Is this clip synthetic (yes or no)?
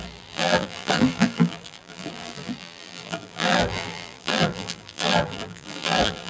yes